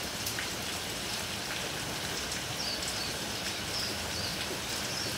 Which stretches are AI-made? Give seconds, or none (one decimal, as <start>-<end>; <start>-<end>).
4.3-5.2